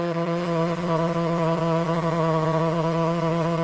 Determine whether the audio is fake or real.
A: fake